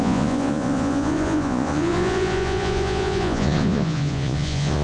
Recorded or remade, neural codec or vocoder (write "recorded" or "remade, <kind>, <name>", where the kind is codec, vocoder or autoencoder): remade, vocoder, Vocos